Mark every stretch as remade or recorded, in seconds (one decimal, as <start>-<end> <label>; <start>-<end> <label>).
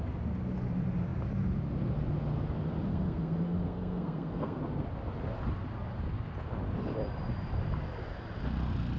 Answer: 0.0-2.9 recorded; 2.9-4.6 remade; 4.6-9.0 recorded